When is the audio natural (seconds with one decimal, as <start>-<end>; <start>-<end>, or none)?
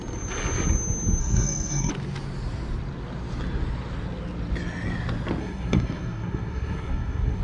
0.0-1.2; 1.9-5.4